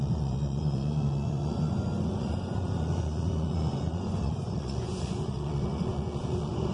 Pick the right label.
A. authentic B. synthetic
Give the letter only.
B